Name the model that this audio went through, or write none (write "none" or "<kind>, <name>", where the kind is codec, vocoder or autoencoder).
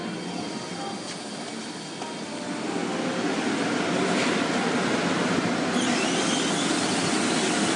none